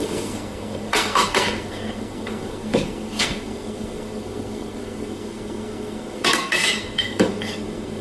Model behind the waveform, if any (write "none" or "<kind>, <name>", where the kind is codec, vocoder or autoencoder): codec, SNAC